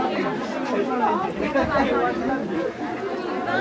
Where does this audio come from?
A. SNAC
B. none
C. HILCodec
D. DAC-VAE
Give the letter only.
B